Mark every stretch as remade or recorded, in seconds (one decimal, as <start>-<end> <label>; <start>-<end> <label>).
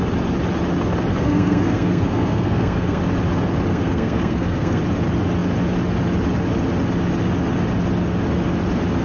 0.0-1.1 recorded; 1.1-3.0 remade; 3.0-3.7 recorded; 3.7-4.8 remade; 4.8-9.0 recorded